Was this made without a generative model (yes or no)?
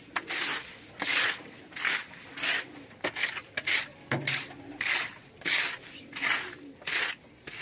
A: yes